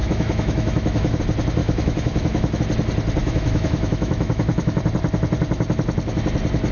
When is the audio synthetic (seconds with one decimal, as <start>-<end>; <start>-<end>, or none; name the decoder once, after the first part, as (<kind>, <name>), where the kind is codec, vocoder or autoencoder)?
0.0-1.2 (autoencoder, DAC-VAE); 1.6-2.6; 3.2-4.8